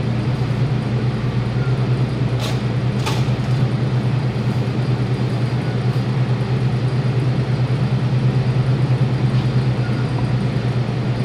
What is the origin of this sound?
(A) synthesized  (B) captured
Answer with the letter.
B